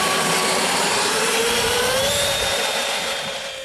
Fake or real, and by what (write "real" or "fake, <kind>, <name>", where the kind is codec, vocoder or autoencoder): fake, vocoder, BigVGAN v2